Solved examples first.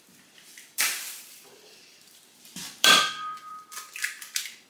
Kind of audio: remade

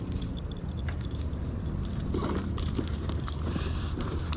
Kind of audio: remade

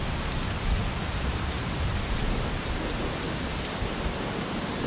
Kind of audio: recorded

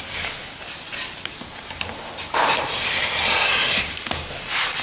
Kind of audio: remade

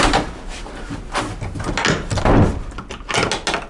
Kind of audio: recorded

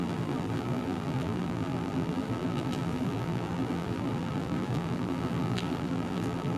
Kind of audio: remade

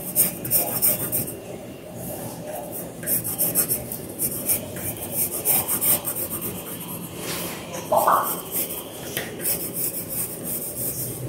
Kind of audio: remade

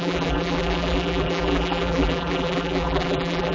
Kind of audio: remade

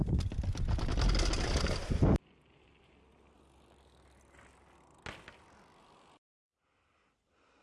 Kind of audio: recorded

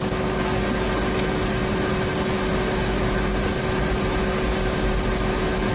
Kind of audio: recorded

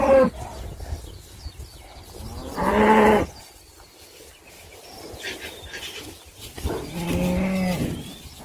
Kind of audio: recorded